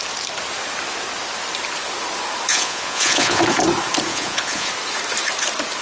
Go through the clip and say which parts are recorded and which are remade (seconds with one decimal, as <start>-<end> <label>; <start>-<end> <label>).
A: 0.0-2.5 recorded; 2.5-3.4 remade; 3.4-4.1 recorded; 4.1-4.7 remade; 4.7-5.8 recorded